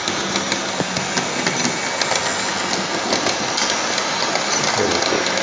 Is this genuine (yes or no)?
yes